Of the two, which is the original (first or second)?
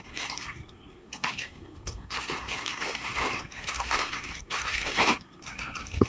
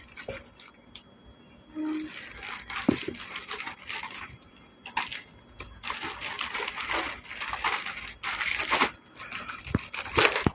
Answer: second